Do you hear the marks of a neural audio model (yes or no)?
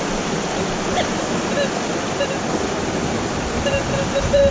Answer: no